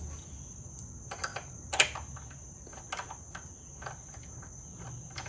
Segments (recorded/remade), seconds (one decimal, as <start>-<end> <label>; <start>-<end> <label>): 0.0-5.3 recorded